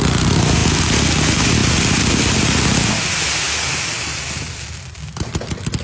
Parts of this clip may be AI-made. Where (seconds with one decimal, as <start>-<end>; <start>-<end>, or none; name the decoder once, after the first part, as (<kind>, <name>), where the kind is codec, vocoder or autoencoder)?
none